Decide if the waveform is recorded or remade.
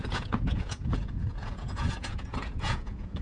remade